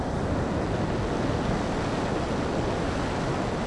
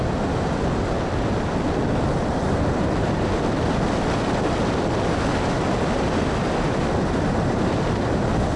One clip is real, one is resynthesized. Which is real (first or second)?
first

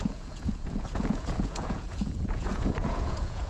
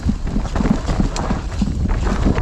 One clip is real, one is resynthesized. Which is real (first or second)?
second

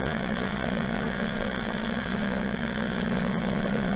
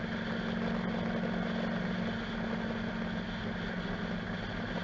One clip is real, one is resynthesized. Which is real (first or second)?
second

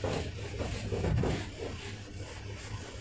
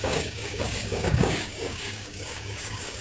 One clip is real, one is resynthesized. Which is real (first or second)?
first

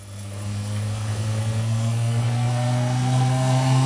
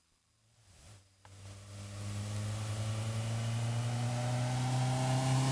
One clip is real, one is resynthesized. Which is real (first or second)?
second